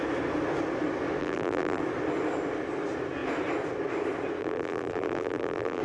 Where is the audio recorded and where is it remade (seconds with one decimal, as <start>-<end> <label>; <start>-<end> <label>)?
0.0-1.2 recorded; 1.2-1.8 remade; 1.8-4.4 recorded; 4.4-5.8 remade